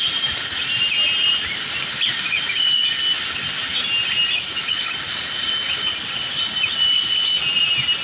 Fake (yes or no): no